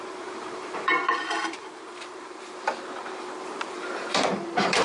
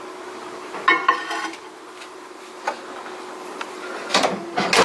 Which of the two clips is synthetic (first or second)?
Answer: first